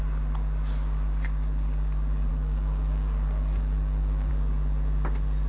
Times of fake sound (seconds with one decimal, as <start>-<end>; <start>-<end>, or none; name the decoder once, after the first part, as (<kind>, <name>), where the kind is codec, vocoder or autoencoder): 2.3-4.3 (codec, DAC)